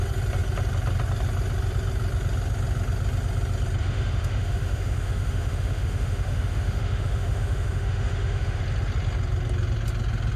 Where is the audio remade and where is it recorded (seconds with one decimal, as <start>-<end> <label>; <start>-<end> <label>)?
0.0-3.8 recorded; 3.8-8.6 remade; 8.6-10.4 recorded